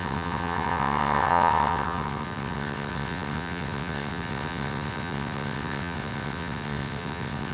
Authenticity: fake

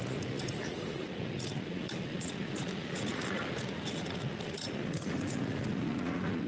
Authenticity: fake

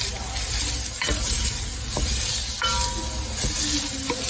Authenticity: real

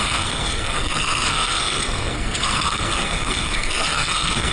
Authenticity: fake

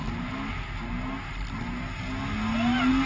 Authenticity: real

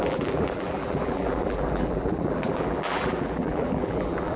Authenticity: fake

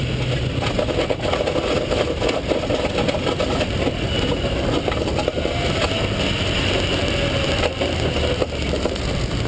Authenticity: real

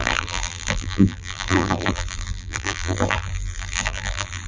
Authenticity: fake